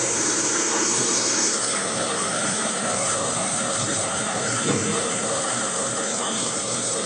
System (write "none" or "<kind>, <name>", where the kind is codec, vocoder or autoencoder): codec, SNAC